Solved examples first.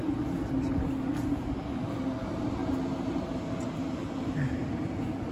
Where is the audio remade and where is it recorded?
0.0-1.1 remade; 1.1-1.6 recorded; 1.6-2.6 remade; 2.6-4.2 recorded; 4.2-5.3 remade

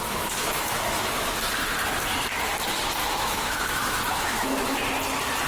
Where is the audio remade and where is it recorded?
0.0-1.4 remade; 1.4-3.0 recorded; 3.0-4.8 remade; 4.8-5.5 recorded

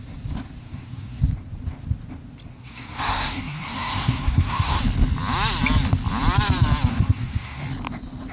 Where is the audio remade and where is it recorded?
0.0-0.6 recorded; 0.6-1.2 remade; 1.2-2.5 recorded; 2.5-4.8 remade; 4.8-6.9 recorded; 6.9-7.6 remade; 7.6-8.3 recorded

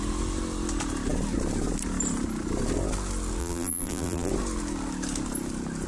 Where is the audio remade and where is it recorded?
0.0-3.4 recorded; 3.4-4.3 remade; 4.3-5.9 recorded

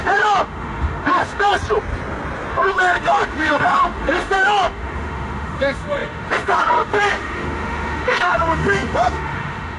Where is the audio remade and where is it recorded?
0.0-1.5 remade; 1.5-2.5 recorded; 2.5-9.8 remade